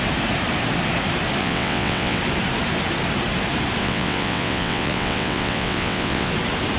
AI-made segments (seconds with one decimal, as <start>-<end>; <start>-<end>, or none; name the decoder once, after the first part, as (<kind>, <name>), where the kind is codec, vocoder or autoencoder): 1.4-2.2 (vocoder, WaveNeXt); 3.8-6.3